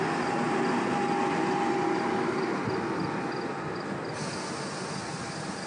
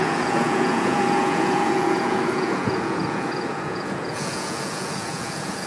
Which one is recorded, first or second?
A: first